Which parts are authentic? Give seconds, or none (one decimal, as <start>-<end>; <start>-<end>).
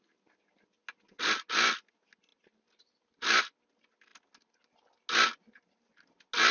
0.0-2.3; 3.4-6.5